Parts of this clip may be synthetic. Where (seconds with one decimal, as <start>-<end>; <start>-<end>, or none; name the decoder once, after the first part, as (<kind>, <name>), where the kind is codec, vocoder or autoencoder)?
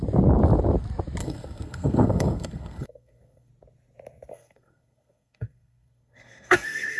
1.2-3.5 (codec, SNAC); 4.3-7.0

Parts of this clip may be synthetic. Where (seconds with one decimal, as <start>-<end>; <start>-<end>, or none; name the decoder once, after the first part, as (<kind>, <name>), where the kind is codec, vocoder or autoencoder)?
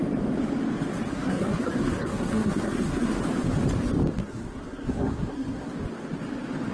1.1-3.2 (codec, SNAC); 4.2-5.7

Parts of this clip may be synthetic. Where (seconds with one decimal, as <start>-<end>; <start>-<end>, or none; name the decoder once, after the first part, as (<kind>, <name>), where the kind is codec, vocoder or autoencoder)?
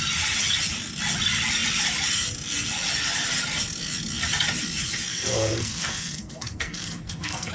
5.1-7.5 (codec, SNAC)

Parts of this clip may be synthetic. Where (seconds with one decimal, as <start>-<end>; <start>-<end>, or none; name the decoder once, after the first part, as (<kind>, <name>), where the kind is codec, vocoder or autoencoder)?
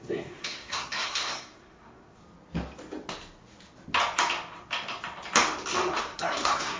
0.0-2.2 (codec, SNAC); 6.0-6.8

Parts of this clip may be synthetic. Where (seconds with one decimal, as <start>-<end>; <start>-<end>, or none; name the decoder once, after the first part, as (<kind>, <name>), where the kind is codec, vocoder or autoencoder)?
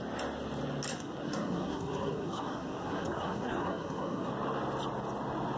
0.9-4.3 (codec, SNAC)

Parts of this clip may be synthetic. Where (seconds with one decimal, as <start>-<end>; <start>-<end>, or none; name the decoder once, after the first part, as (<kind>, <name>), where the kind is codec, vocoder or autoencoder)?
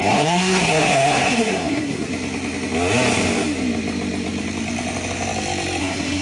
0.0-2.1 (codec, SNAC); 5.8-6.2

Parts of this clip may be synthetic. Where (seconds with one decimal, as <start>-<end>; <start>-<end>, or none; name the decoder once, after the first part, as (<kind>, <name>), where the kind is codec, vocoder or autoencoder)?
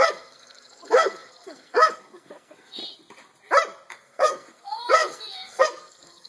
0.0-2.8 (codec, SNAC); 3.9-6.3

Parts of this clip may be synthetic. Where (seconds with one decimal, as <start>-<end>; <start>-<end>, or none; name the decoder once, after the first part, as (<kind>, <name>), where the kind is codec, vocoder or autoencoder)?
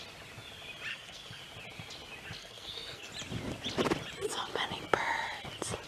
0.9-1.4 (codec, SNAC); 2.4-3.1